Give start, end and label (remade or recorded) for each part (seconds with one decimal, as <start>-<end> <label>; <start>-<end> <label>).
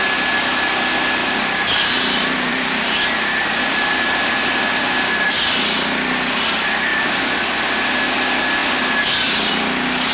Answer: 0.0-1.2 recorded; 1.2-4.6 remade; 4.6-6.9 recorded; 6.9-7.4 remade; 7.4-10.1 recorded